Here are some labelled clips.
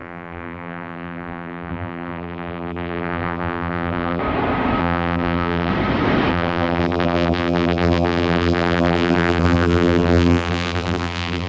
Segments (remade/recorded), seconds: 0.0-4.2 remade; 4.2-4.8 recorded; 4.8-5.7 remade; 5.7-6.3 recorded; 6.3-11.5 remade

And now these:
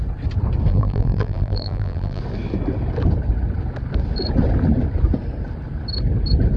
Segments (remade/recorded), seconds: 0.0-0.7 recorded; 0.7-2.2 remade; 2.2-6.6 recorded